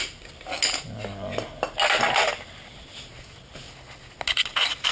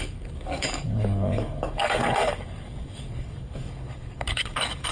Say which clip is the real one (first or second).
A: first